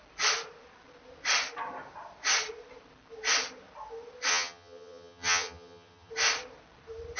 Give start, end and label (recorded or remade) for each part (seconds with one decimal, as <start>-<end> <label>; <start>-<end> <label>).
0.0-4.3 recorded; 4.3-6.1 remade; 6.1-7.2 recorded